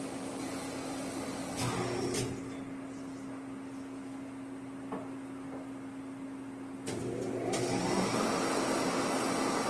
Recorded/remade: recorded